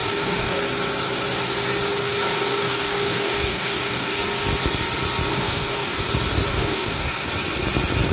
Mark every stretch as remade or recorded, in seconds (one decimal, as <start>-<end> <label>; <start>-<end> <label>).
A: 0.0-0.6 remade; 0.6-2.0 recorded; 2.0-4.2 remade; 4.2-5.3 recorded; 5.3-6.0 remade; 6.0-6.5 recorded; 6.5-7.3 remade; 7.3-8.1 recorded